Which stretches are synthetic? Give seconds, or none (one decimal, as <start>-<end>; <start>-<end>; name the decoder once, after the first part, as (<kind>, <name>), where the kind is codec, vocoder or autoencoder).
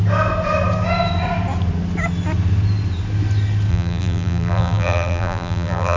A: 3.7-6.0 (vocoder, BigVGAN v2)